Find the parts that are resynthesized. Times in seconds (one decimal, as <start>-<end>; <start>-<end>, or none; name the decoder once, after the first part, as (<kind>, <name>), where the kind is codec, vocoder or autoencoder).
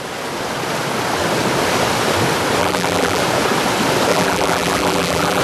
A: 2.6-3.2 (vocoder, BigVGAN v2); 4.1-5.4